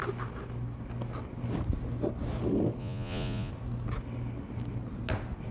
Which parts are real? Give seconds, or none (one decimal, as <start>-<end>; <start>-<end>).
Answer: 0.0-2.8; 3.5-5.5

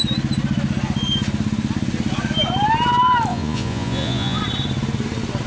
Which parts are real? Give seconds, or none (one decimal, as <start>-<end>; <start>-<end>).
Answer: 0.0-3.3; 4.4-5.5

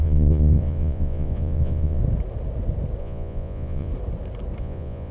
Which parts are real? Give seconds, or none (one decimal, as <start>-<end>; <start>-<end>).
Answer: 2.0-3.0; 3.9-4.6